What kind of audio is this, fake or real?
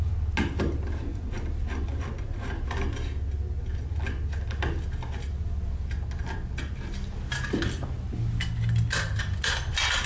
real